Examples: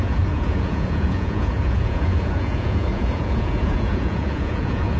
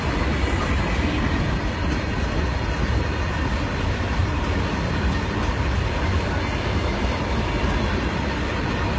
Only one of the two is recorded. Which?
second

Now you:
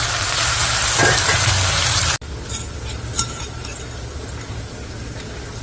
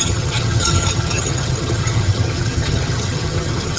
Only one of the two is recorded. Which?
first